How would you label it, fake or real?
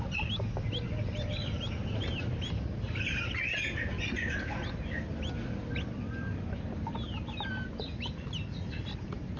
real